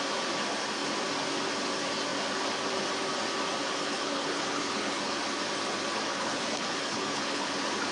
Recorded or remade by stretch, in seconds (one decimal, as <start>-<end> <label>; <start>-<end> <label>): 0.0-3.6 recorded; 3.6-5.2 remade; 5.2-6.1 recorded; 6.1-7.5 remade; 7.5-7.9 recorded